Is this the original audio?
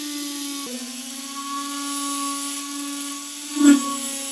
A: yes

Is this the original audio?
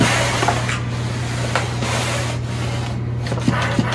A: yes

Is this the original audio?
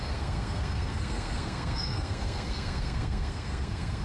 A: no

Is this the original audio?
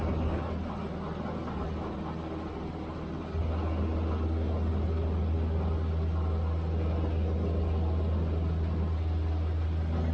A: yes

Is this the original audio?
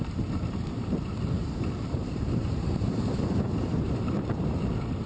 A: no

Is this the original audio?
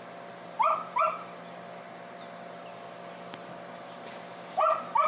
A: no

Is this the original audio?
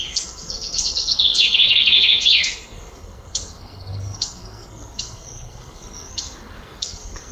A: no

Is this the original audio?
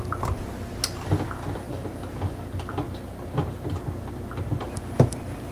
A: yes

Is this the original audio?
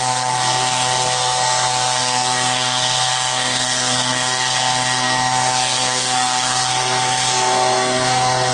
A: no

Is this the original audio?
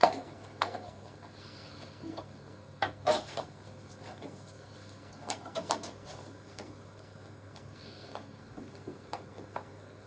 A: no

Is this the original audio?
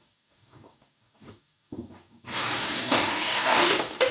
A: no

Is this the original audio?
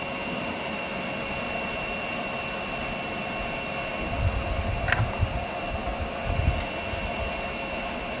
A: yes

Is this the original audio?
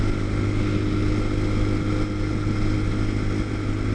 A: yes